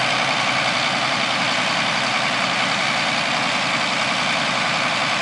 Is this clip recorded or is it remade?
remade